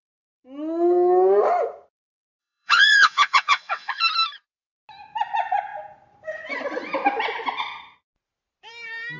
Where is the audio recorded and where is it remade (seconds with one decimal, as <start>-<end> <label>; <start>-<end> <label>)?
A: 0.0-2.4 recorded; 2.4-4.0 remade; 4.0-9.2 recorded